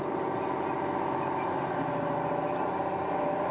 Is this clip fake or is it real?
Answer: real